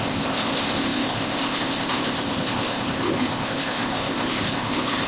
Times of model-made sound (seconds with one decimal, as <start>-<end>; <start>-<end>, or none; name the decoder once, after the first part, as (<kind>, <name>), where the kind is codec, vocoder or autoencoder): 0.0-5.1 (codec, ZipCodec)